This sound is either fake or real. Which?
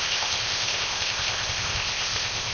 fake